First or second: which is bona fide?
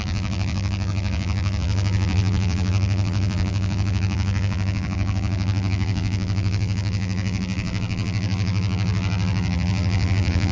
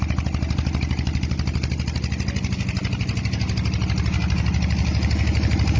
second